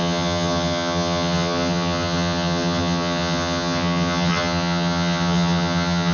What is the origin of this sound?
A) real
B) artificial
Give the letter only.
B